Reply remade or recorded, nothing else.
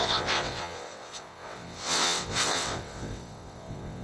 remade